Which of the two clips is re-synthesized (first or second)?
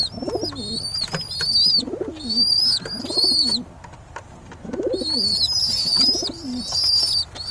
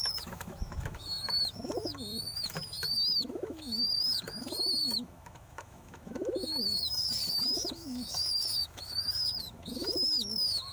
second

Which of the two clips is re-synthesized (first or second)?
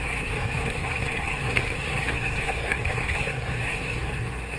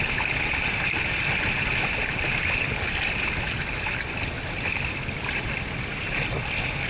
first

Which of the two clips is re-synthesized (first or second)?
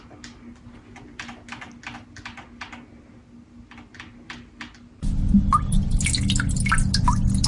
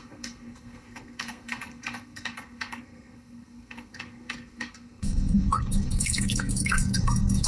second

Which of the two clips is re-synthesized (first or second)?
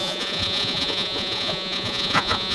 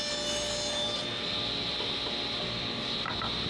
first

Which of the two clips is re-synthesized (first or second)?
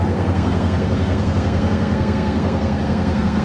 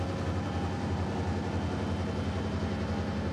first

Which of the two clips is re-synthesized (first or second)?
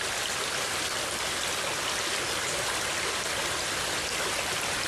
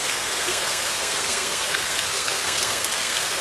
second